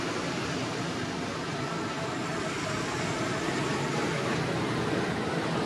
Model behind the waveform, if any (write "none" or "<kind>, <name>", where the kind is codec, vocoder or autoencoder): none